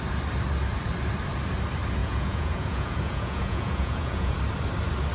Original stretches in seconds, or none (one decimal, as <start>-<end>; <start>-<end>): 0.0-2.0; 4.4-5.1